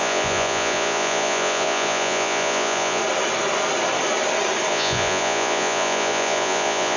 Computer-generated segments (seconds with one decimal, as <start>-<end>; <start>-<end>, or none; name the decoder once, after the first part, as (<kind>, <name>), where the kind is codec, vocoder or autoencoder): 0.0-3.0 (vocoder, Vocos); 4.7-7.0